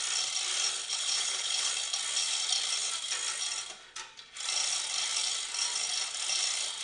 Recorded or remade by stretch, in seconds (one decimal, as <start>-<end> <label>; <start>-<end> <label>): 0.0-0.8 recorded; 0.8-1.7 remade; 1.7-6.8 recorded